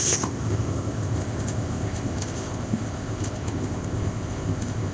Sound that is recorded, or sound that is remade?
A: remade